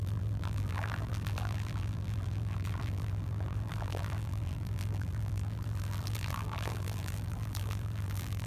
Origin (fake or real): fake